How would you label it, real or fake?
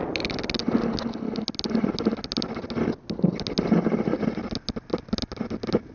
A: real